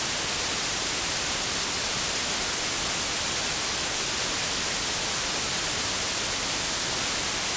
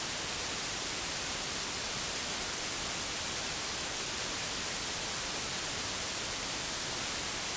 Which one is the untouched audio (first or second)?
first